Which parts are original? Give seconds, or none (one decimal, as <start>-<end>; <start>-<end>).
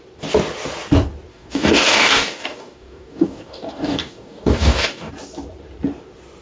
0.0-1.3; 5.1-6.4